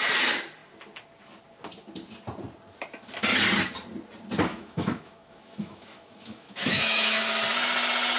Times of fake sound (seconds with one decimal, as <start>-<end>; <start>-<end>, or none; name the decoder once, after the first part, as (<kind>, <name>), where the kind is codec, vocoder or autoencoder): 4.5-7.2 (autoencoder, DAC-VAE)